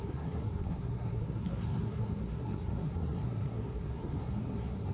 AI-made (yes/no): yes